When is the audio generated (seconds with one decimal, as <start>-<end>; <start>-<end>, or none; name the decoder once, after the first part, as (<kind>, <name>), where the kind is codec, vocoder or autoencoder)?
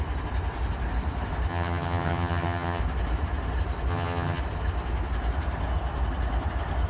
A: 1.5-2.8 (vocoder, HiFi-GAN); 3.9-4.4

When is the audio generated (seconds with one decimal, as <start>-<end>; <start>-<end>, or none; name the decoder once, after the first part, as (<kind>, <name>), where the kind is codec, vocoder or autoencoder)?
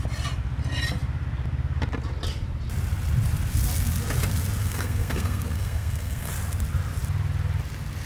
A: 4.6-6.3 (codec, SNAC)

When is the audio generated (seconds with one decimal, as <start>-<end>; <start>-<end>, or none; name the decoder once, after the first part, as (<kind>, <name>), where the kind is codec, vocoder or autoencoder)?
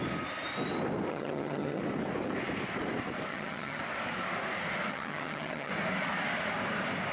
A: 1.1-1.8 (vocoder, HiFi-GAN); 3.3-3.8; 4.9-5.7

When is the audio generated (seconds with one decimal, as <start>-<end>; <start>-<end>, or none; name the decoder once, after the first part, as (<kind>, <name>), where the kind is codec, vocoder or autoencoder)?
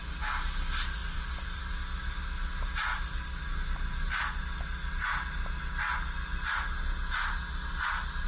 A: 1.0-1.6 (vocoder, BigVGAN v2)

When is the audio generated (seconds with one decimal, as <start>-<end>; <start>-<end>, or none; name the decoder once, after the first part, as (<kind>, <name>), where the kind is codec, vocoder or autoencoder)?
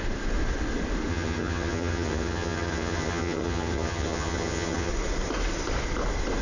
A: 1.1-4.9 (vocoder, HiFi-GAN)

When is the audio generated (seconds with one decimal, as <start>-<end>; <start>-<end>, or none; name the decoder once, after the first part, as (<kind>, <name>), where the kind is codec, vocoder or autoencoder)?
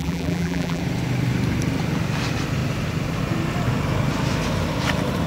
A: 0.0-0.8 (vocoder, BigVGAN v2)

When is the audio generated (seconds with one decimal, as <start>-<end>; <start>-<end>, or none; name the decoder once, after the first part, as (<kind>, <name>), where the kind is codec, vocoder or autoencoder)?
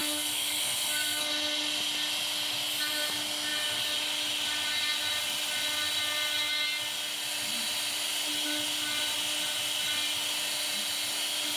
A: 0.0-1.3 (codec, SNAC)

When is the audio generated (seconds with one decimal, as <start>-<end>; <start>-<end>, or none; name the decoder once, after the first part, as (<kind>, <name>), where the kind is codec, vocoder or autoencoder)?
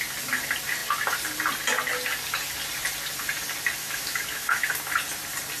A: 3.8-4.7 (autoencoder, DAC-VAE)